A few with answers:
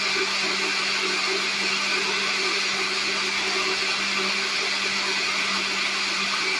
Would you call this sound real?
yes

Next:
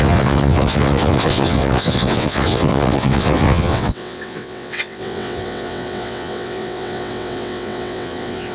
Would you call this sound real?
no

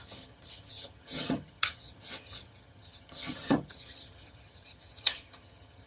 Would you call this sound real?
no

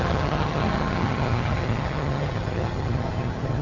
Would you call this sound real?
no